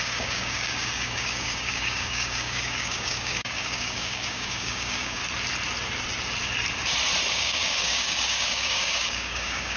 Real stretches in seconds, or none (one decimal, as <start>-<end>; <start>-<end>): 5.2-7.3